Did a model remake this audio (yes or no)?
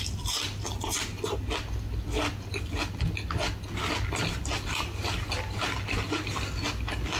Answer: no